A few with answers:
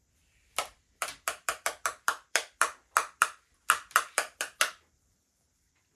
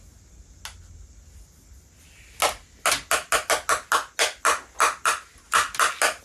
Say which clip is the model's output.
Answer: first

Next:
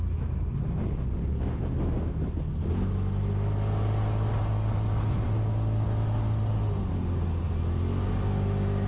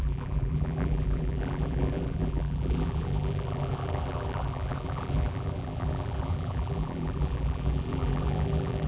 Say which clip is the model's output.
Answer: second